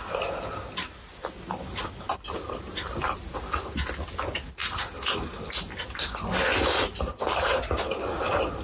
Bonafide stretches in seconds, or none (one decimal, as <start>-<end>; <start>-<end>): 0.0-8.6